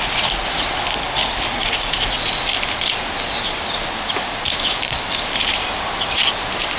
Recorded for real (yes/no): yes